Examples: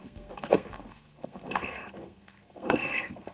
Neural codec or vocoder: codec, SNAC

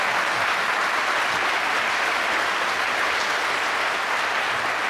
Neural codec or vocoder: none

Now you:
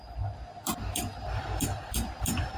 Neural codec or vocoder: vocoder, BigVGAN v2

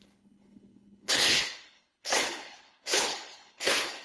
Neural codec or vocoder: codec, HILCodec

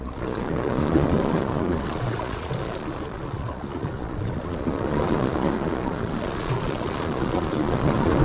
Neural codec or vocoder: vocoder, Vocos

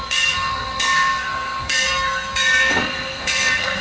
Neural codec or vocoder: codec, SNAC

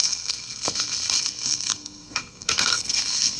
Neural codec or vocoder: codec, SNAC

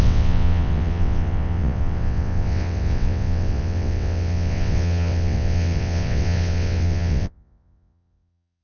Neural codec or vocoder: vocoder, WaveNeXt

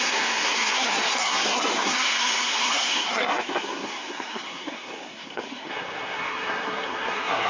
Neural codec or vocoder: codec, SNAC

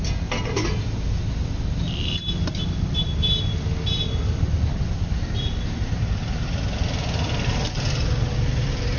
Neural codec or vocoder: none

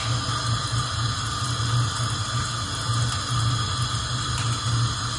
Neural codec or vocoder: none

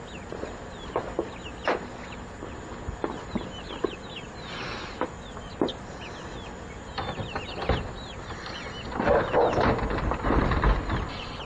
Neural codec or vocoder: none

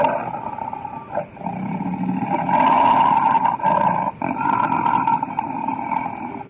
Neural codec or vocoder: none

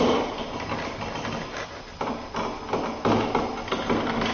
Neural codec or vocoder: none